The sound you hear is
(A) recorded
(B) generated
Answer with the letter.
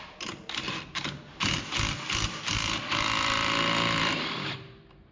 B